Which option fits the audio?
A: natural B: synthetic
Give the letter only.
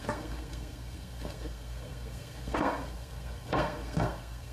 B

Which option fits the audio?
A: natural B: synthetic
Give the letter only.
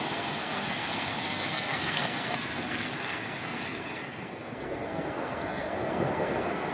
B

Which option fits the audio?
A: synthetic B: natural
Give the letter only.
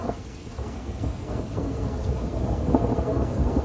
A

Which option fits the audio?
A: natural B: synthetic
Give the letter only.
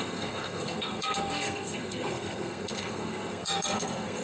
B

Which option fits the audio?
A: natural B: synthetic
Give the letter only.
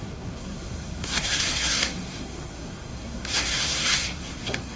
B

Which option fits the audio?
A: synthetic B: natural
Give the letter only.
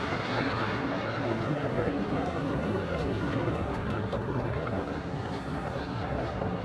A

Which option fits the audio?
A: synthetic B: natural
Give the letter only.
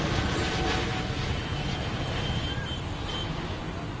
B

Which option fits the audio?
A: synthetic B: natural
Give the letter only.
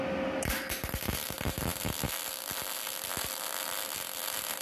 B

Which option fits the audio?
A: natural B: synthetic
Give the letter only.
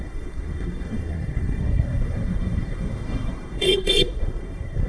B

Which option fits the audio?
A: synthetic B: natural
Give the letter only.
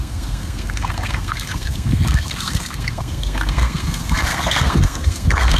A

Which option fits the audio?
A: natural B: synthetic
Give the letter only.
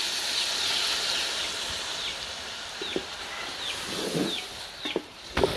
A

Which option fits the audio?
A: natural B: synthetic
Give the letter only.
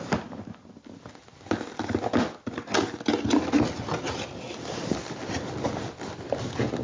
A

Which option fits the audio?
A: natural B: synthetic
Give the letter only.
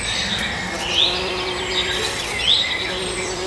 A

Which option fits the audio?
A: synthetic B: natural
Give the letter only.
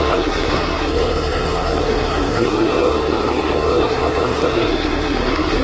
A